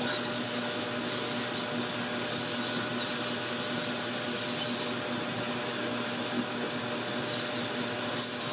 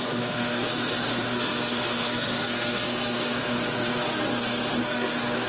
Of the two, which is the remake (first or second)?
second